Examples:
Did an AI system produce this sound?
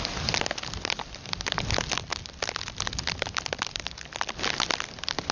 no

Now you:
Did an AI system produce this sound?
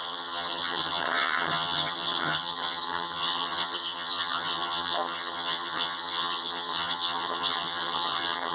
yes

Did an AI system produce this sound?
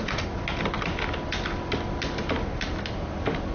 no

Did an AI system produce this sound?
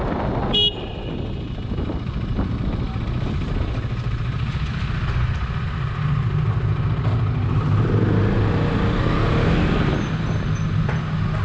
no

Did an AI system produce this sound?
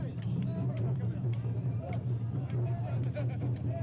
no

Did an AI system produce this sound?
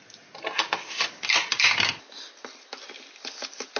no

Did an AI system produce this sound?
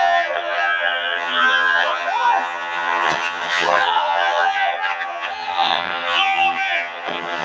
yes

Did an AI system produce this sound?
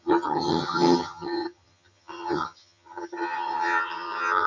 yes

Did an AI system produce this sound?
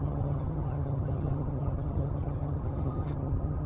yes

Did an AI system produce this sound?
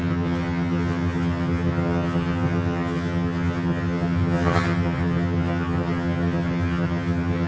yes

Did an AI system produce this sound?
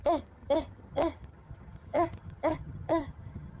yes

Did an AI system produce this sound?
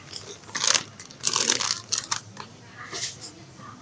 no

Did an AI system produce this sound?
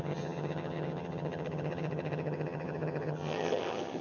yes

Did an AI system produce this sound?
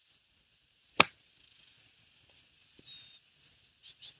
no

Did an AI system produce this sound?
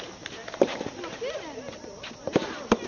no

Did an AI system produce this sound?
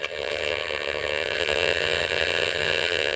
yes